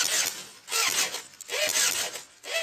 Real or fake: real